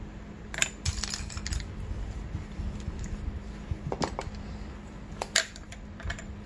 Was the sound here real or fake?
real